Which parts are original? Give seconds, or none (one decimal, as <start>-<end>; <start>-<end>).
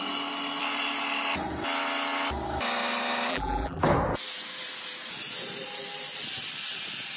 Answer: 0.0-3.3; 3.8-7.2